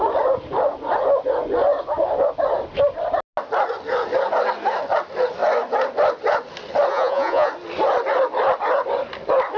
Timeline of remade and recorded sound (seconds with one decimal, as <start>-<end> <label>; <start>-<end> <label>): 0.0-6.9 recorded; 6.9-7.5 remade; 7.5-9.6 recorded